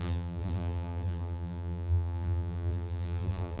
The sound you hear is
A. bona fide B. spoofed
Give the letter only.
B